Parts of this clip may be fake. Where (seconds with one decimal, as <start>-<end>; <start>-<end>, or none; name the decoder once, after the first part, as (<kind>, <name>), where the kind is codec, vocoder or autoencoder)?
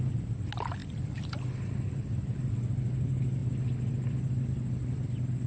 0.8-2.4 (vocoder, BigVGAN v2); 3.4-5.5